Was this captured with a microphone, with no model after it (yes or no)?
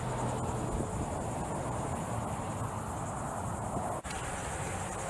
yes